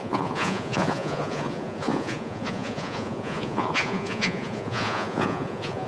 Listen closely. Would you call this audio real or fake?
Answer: fake